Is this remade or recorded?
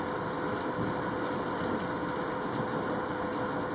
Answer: recorded